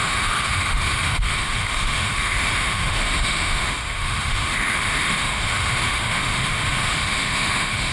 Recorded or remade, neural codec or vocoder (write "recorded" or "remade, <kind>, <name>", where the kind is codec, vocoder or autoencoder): remade, autoencoder, DAC-VAE